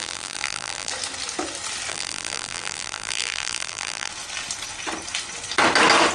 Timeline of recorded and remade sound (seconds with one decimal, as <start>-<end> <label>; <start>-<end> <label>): 0.0-0.9 remade; 0.9-1.9 recorded; 1.9-4.1 remade; 4.1-6.1 recorded